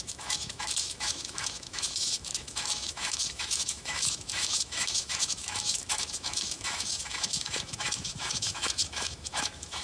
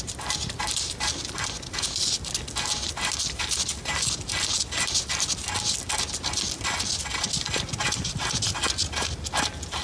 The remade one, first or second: first